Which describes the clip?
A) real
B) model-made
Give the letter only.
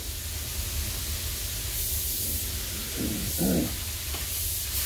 A